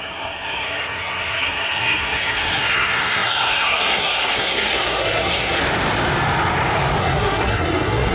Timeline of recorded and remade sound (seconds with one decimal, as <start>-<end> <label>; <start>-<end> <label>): 0.0-5.6 remade; 5.6-7.0 recorded; 7.0-8.1 remade